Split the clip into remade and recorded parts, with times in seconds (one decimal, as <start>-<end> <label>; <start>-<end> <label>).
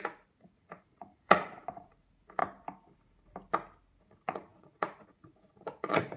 0.0-2.4 remade; 2.4-4.0 recorded; 4.0-6.2 remade